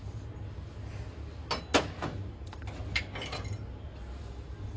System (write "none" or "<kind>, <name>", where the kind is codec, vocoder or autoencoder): none